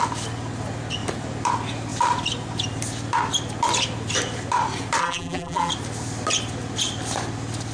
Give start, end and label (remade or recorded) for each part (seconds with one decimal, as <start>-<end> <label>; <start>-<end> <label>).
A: 0.0-5.0 recorded; 5.0-5.7 remade; 5.7-7.7 recorded